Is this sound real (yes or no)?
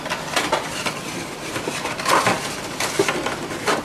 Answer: no